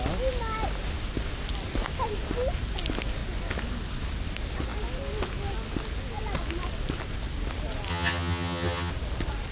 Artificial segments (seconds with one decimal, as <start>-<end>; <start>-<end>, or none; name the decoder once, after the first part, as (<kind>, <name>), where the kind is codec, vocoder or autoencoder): 7.9-8.9 (vocoder, HiFi-GAN)